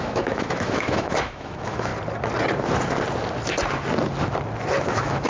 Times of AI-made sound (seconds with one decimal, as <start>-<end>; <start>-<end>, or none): 0.0-1.9; 4.8-5.3